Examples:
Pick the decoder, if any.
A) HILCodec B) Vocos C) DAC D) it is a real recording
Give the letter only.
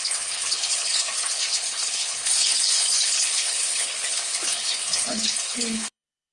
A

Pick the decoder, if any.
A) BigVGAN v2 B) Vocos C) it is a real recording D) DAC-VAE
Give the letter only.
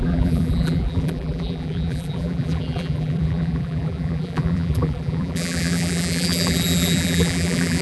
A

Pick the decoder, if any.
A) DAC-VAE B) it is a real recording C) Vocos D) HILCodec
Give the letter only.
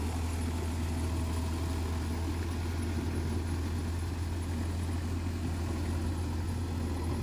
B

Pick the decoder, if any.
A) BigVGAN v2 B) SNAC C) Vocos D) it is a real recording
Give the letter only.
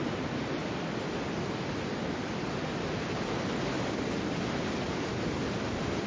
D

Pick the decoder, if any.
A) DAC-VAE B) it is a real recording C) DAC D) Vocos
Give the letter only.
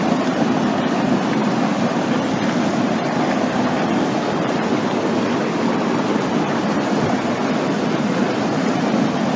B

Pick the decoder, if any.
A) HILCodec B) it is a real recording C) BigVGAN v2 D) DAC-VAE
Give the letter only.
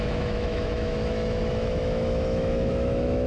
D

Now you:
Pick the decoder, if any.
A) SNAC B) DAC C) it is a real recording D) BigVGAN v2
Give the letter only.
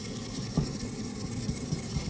C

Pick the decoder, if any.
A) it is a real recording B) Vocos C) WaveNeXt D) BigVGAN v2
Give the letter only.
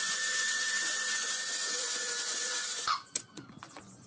B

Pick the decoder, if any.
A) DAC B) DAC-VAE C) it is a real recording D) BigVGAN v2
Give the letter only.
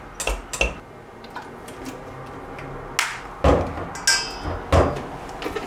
C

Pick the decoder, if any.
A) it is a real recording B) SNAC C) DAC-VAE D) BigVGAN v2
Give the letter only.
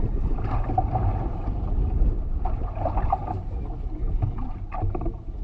A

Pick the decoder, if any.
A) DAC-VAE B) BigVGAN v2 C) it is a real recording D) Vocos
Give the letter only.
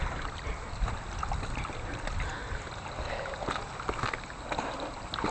C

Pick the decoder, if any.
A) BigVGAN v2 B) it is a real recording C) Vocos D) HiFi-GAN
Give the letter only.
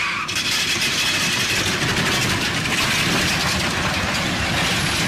B